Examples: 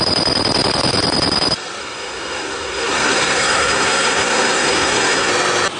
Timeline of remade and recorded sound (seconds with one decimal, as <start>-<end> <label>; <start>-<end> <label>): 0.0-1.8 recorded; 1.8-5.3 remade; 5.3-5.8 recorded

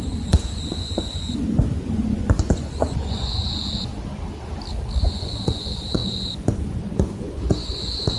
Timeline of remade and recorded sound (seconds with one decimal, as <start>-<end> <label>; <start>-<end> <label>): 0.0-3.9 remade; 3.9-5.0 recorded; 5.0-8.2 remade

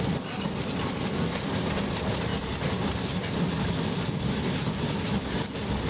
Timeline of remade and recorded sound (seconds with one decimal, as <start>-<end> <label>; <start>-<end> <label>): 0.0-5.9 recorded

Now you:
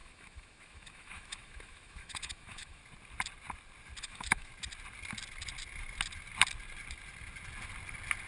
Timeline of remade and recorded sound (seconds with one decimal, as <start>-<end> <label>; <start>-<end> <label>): 0.0-2.8 remade; 2.8-4.0 recorded; 4.0-4.5 remade; 4.5-8.3 recorded

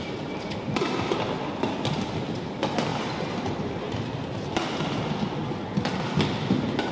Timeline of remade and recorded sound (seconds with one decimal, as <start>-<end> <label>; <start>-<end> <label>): 0.0-2.9 recorded; 2.9-4.0 remade; 4.0-6.9 recorded

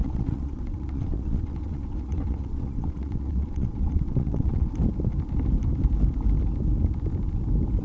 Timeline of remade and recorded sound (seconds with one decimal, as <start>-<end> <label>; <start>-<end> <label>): 0.0-4.7 remade; 4.7-7.8 recorded

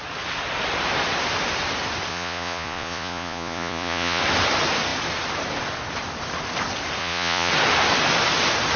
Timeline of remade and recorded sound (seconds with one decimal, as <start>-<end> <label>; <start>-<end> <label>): 0.0-2.1 recorded; 2.1-4.2 remade; 4.2-7.0 recorded; 7.0-7.5 remade; 7.5-8.8 recorded